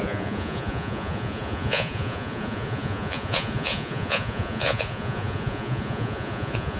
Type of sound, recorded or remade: remade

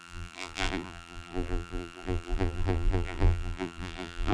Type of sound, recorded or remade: remade